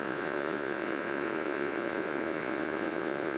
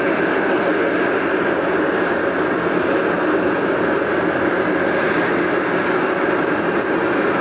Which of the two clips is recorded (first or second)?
second